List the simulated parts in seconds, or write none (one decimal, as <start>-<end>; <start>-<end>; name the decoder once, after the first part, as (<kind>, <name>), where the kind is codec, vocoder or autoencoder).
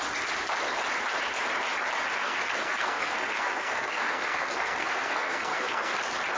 2.2-6.0 (codec, SNAC)